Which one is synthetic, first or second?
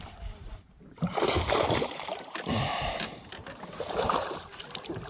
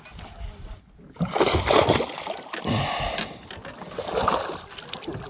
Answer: first